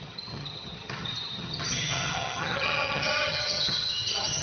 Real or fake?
fake